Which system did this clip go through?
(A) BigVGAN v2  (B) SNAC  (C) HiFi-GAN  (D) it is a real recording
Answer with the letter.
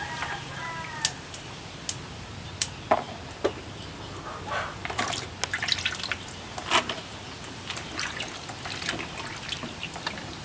D